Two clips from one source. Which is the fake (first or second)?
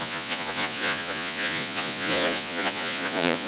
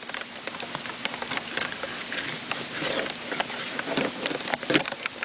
first